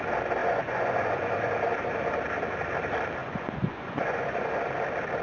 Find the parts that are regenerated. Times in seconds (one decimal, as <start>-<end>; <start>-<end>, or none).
0.4-1.5; 3.2-4.5